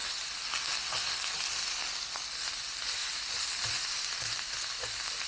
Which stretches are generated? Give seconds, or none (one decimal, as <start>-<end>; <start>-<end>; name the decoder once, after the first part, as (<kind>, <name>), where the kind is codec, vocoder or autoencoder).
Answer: none